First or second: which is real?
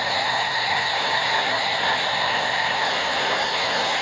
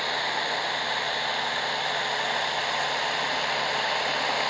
second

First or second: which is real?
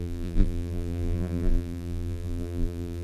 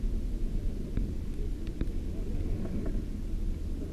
second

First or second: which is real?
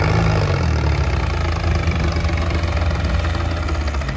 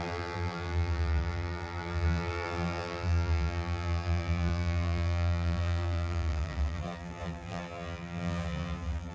first